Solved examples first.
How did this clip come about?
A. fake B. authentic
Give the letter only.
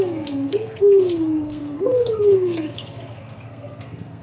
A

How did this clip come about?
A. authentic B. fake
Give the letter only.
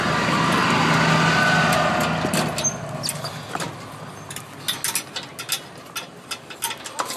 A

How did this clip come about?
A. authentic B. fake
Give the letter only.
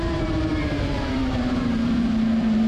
B